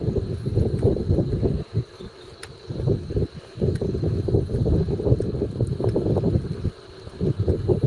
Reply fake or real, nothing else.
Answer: real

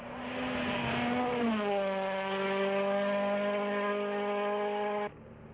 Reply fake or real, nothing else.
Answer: real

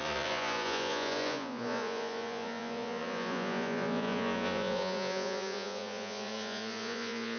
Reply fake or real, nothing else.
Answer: fake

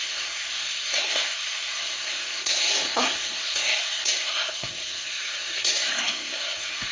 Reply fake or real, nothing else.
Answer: fake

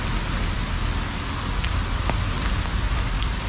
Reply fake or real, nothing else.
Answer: real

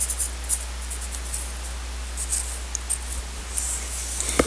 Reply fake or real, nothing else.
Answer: real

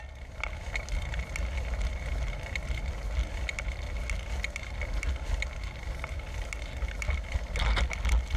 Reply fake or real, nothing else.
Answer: real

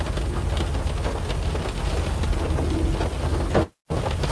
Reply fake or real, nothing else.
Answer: real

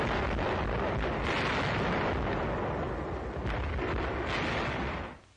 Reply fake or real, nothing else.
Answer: real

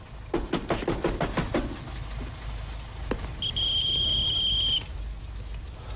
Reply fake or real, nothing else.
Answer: real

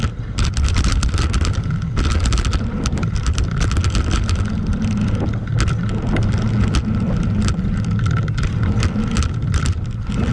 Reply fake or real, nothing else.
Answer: real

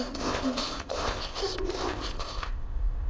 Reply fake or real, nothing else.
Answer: fake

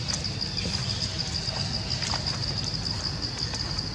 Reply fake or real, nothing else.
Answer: real